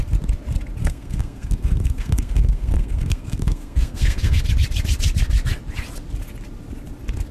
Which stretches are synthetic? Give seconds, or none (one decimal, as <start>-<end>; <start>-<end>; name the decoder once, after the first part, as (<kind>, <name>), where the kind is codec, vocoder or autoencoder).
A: 0.8-4.4 (codec, SNAC)

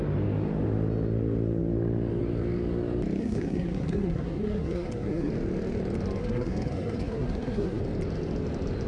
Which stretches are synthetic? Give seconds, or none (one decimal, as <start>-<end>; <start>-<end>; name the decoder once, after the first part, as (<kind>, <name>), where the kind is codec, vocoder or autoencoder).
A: 3.2-5.3 (codec, SNAC); 6.2-7.8

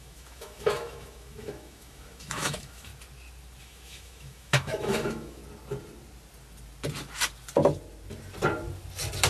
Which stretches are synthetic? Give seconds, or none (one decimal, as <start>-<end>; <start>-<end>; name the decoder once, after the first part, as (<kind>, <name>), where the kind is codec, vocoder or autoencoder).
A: 0.0-2.9 (autoencoder, DAC-VAE); 3.6-5.4

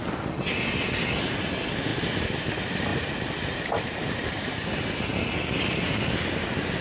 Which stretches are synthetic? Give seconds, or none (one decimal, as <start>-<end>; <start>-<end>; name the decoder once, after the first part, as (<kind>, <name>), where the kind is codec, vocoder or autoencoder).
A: 1.9-2.5 (vocoder, BigVGAN v2); 2.9-4.8